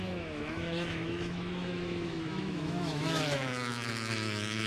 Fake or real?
fake